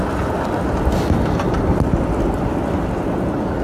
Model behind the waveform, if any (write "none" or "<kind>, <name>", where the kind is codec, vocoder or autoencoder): none